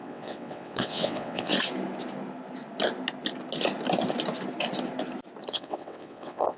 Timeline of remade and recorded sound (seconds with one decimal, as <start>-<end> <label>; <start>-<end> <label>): 0.0-1.5 remade; 1.5-5.5 recorded; 5.5-6.6 remade